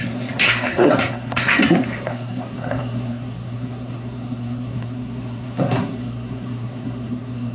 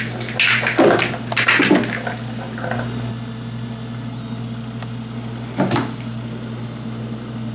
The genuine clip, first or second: second